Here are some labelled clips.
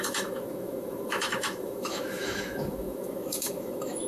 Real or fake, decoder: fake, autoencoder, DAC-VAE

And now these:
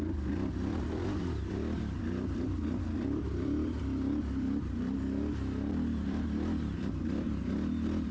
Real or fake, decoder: fake, vocoder, BigVGAN v2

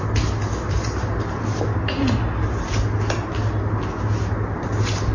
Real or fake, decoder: real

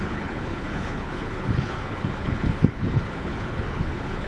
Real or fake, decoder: fake, codec, HILCodec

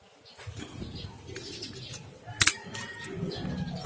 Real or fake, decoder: real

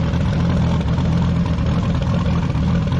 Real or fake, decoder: fake, vocoder, BigVGAN v2